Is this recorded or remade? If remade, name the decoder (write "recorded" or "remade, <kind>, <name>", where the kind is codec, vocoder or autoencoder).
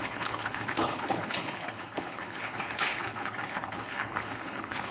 remade, codec, HILCodec